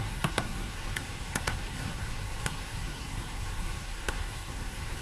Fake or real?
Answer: fake